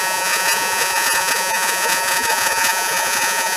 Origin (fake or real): fake